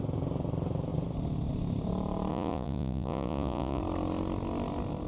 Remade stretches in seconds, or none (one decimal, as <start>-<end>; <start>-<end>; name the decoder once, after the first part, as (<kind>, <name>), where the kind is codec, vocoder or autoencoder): 2.3-3.8 (vocoder, Vocos)